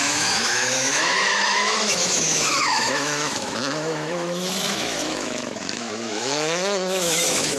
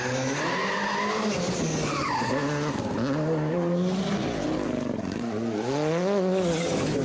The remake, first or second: first